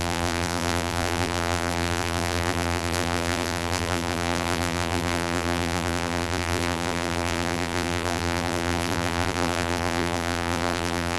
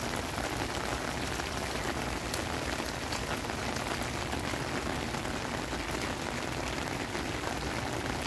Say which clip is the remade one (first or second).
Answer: first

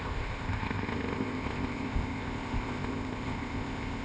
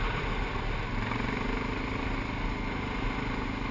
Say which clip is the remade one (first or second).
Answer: first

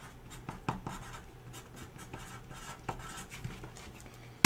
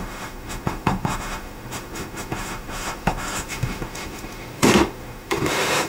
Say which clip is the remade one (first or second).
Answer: second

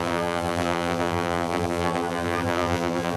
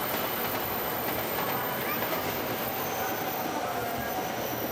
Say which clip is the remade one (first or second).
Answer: first